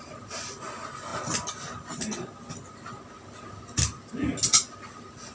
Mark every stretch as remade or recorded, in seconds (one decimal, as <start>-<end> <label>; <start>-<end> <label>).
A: 0.0-5.3 recorded